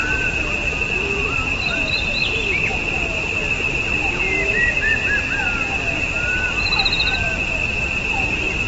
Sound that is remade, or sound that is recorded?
recorded